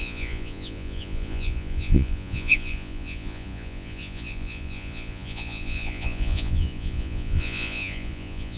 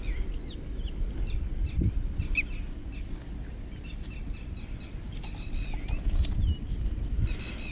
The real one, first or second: second